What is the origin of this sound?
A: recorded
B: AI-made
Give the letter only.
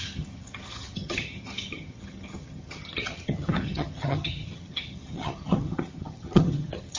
B